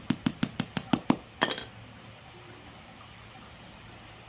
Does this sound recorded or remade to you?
recorded